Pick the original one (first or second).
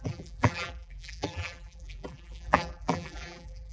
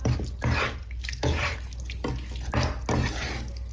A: second